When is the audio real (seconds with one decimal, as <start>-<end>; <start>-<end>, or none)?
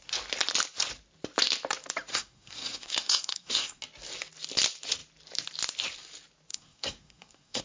0.0-2.1; 3.8-6.5